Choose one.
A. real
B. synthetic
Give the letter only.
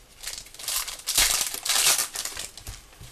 A